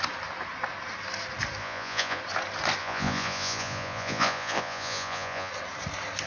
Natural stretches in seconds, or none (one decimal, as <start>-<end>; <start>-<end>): 0.0-1.6; 2.2-2.8; 5.5-6.3